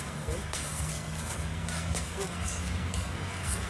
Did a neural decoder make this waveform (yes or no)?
yes